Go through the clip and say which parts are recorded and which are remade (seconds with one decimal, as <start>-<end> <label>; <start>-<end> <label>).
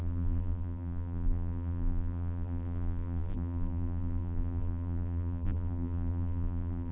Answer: 0.0-6.9 remade